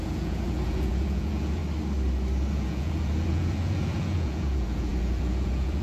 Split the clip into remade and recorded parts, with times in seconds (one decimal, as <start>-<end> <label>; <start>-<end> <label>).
0.0-1.6 remade; 1.6-2.5 recorded; 2.5-5.8 remade